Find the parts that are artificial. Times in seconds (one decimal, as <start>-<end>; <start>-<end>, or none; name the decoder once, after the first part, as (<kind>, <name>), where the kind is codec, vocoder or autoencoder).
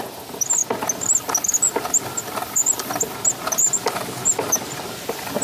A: none